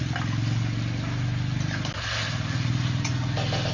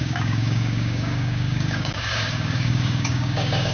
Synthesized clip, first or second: second